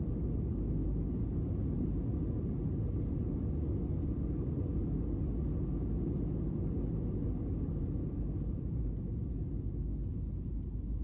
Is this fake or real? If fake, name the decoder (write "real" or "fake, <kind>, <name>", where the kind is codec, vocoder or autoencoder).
real